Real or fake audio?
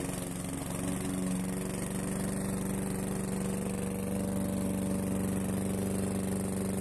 real